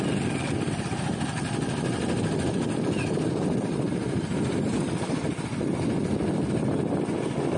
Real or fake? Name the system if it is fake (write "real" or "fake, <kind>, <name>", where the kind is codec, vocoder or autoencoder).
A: real